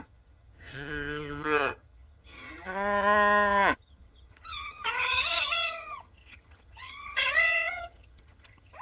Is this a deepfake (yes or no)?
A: yes